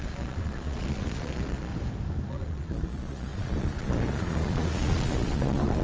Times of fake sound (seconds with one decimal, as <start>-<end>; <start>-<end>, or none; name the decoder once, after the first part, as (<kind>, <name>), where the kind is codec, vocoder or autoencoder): 0.0-1.7 (vocoder, Vocos); 2.3-5.8